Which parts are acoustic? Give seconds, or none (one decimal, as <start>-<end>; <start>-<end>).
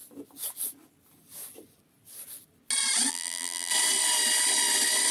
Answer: 0.0-3.1; 3.7-5.1